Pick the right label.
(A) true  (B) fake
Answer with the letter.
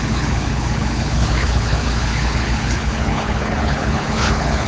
B